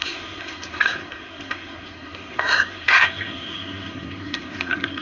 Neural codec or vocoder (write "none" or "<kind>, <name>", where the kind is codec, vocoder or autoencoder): codec, SNAC